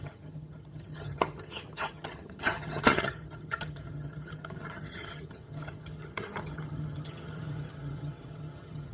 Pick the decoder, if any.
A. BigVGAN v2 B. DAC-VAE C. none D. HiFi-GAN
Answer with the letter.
D